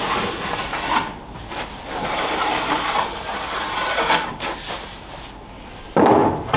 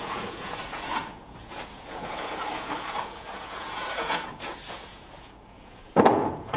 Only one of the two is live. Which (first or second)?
first